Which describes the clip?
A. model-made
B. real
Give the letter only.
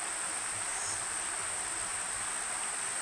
B